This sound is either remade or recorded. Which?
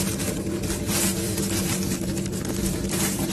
remade